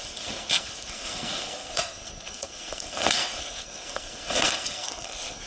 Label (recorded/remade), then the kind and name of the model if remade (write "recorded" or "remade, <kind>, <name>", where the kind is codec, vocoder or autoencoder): remade, codec, SNAC